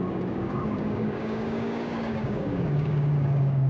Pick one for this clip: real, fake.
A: fake